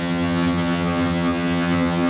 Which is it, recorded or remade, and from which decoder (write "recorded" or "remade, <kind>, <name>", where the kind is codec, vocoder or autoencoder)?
remade, vocoder, HiFi-GAN